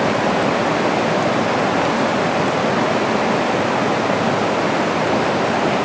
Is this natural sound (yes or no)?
yes